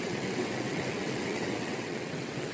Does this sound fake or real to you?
fake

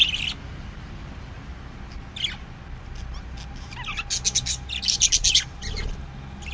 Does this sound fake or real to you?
real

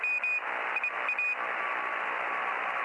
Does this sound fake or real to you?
real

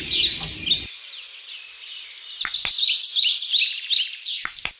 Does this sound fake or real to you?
real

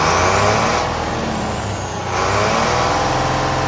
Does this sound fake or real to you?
real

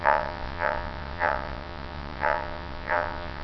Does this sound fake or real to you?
fake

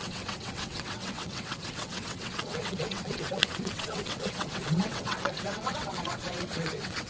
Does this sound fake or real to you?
fake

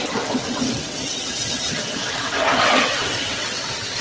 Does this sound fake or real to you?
fake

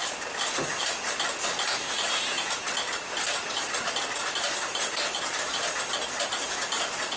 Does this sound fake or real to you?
real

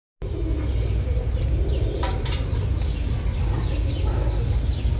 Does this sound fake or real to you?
real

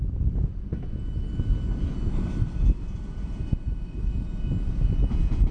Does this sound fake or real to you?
real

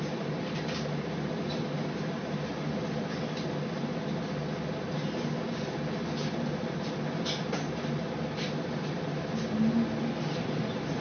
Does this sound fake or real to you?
real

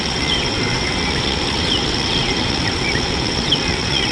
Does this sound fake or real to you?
fake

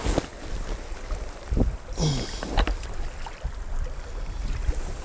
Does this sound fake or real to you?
real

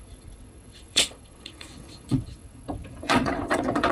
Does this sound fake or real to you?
fake